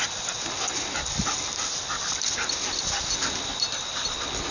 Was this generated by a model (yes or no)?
no